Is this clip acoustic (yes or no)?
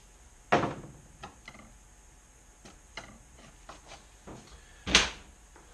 yes